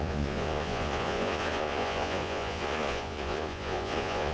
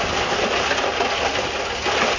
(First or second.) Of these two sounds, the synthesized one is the first